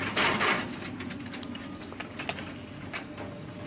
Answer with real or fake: real